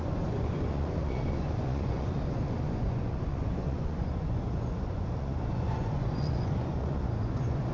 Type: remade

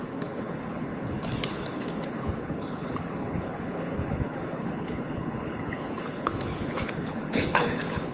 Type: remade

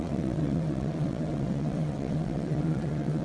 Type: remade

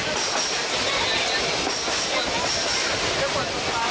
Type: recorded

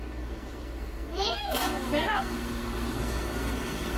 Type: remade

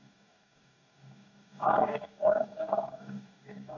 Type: remade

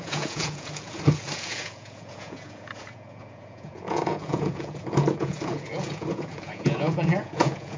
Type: remade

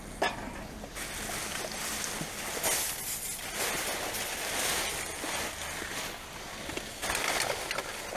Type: recorded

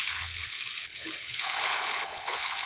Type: remade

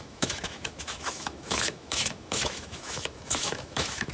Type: remade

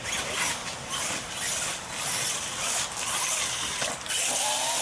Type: recorded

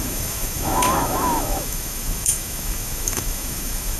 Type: remade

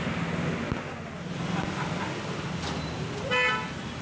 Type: recorded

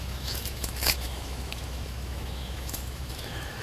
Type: remade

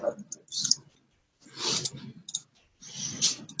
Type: recorded